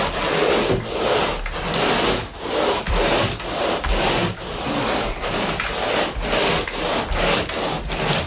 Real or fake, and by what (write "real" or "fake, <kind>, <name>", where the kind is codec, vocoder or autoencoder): real